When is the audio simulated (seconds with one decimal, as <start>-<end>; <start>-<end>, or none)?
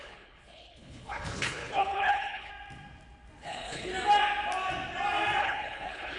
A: 0.0-2.5; 3.4-3.9; 5.4-6.2